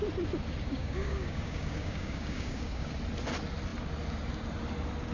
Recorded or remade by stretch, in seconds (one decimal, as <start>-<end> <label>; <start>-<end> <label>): 0.0-0.7 recorded; 0.7-2.9 remade; 2.9-5.1 recorded